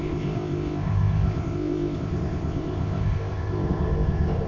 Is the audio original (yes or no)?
no